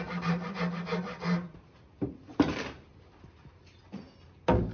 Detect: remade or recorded remade